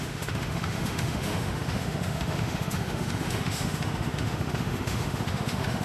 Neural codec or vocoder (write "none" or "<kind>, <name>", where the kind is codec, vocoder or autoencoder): autoencoder, DAC-VAE